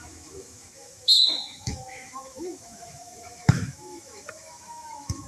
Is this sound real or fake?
fake